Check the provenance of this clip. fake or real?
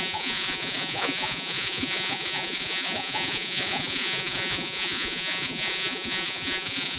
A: fake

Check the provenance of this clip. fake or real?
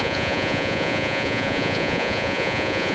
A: fake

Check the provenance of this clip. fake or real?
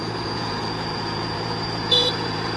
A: fake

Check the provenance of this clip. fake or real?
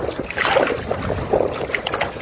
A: real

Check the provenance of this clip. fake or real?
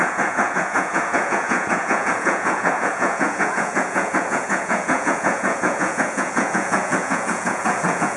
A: fake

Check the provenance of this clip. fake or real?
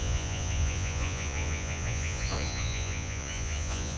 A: fake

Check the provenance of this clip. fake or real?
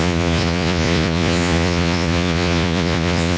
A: fake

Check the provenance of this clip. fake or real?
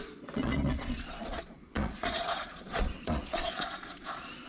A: fake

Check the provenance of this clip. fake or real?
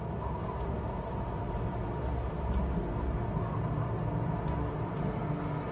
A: real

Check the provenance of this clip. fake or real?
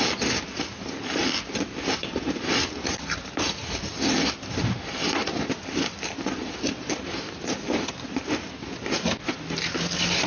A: real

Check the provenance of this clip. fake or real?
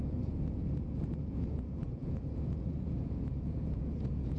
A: fake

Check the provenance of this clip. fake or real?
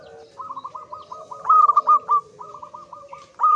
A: real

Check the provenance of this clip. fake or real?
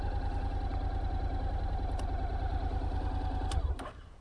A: real